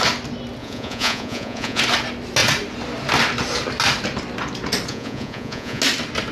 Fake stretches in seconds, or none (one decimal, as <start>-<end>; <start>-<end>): 0.6-1.8; 4.9-5.8